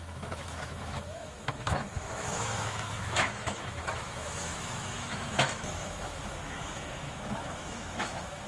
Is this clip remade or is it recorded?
remade